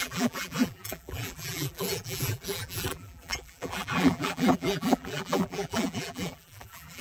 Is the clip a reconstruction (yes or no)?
yes